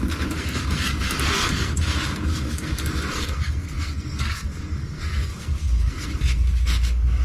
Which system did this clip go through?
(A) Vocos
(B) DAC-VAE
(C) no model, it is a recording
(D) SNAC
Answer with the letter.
D